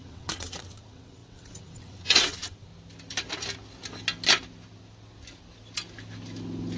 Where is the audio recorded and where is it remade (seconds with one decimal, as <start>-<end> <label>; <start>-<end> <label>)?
0.0-2.7 remade; 2.7-6.8 recorded